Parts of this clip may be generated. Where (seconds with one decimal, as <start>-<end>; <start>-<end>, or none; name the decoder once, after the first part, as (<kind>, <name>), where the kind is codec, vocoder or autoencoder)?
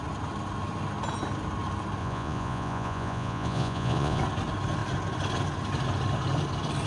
2.0-4.2 (vocoder, Vocos)